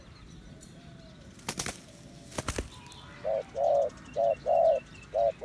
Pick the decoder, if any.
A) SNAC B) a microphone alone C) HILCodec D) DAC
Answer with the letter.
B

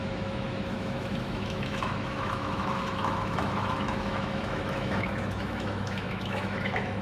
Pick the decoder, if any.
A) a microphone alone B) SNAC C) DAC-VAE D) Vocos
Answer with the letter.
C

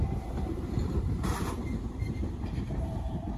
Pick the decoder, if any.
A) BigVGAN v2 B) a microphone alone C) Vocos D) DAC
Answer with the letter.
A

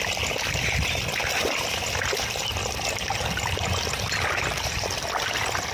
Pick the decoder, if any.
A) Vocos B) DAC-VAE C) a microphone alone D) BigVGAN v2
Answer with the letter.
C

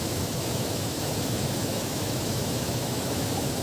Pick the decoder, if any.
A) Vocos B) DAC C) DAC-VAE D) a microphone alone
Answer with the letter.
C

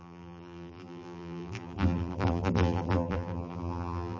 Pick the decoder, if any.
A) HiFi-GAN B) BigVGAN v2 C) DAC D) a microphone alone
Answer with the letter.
B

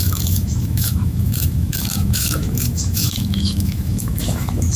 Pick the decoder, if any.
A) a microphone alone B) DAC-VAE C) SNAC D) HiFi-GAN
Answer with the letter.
B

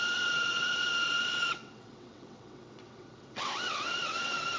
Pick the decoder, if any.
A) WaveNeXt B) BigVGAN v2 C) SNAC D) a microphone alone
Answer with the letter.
A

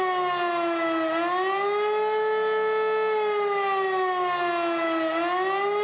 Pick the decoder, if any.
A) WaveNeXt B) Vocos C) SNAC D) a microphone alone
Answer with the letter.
D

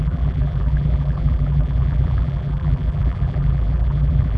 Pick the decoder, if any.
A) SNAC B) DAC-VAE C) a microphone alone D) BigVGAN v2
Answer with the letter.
D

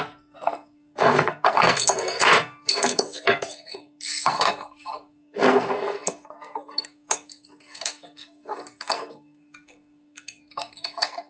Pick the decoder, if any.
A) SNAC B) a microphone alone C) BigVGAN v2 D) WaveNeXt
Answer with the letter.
A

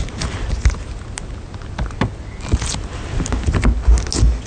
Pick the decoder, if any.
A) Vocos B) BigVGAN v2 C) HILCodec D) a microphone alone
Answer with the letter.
D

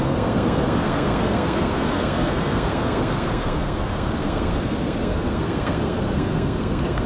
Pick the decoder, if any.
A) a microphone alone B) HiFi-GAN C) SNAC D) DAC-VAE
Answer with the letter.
C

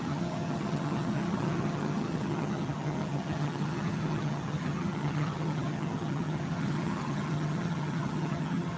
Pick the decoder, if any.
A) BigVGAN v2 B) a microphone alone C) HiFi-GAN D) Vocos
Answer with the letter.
C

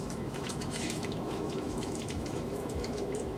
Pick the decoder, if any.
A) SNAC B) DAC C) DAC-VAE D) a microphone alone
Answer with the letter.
C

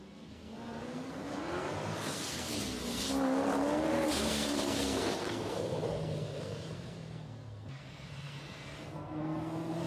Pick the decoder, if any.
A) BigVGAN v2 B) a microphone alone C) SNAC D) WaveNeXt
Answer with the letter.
C